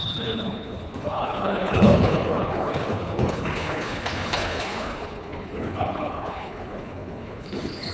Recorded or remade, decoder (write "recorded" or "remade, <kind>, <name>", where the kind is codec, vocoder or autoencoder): remade, codec, HILCodec